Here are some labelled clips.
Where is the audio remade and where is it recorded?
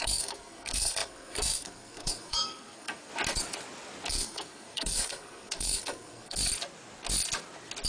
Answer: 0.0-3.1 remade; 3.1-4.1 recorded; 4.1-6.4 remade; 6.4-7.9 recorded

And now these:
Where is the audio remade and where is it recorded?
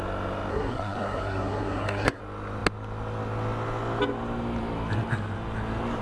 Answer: 0.0-0.5 recorded; 0.5-2.2 remade; 2.2-6.0 recorded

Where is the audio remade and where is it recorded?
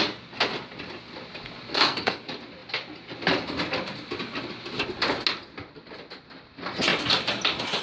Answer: 0.0-1.7 recorded; 1.7-2.2 remade; 2.2-7.8 recorded